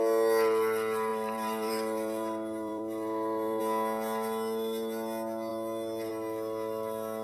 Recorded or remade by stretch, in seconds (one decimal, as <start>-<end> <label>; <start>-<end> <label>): 0.0-1.1 recorded; 1.1-3.6 remade; 3.6-7.2 recorded